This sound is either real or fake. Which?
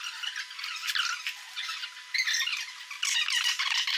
real